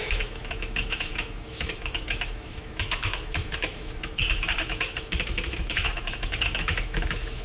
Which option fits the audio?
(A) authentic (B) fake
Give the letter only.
B